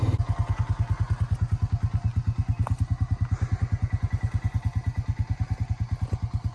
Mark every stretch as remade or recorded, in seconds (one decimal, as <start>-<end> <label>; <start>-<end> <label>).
0.0-6.5 recorded